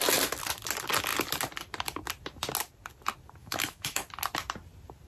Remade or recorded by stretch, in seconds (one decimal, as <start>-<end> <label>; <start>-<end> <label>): 0.0-3.4 recorded; 3.4-4.1 remade; 4.1-5.1 recorded